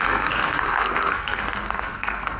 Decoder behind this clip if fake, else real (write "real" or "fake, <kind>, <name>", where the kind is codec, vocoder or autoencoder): fake, codec, SNAC